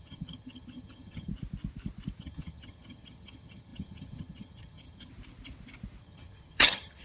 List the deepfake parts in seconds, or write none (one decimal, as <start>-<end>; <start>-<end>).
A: 0.0-1.3; 2.2-5.1; 6.0-7.0